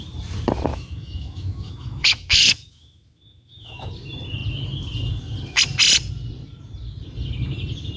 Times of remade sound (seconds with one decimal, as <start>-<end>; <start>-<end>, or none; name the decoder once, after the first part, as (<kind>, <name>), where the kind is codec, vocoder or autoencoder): 0.7-3.9 (autoencoder, DAC-VAE)